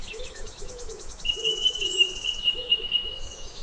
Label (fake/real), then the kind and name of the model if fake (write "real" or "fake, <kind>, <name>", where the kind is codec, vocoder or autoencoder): fake, autoencoder, DAC-VAE